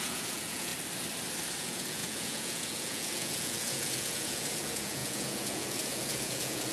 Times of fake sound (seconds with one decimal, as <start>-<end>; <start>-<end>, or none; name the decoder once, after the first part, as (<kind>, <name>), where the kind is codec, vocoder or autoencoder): 0.0-0.7 (vocoder, Vocos); 1.6-6.7